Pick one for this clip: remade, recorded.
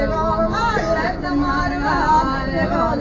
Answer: recorded